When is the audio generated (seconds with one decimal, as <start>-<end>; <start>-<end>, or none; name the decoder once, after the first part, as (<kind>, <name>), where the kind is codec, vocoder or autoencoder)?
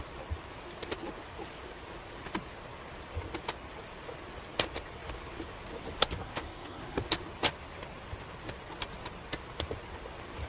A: 6.2-7.0 (codec, SNAC)